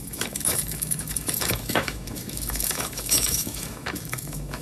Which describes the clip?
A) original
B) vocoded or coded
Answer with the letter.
B